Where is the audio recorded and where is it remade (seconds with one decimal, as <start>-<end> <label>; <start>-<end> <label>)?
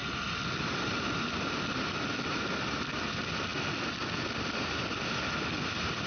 0.0-6.1 recorded